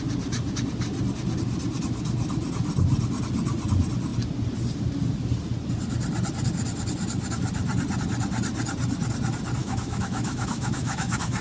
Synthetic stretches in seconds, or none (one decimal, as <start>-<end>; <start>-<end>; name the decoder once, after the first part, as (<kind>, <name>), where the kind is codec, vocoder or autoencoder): 9.6-11.4 (autoencoder, DAC-VAE)